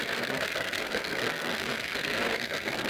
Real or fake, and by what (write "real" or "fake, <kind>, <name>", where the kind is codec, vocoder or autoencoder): fake, codec, SNAC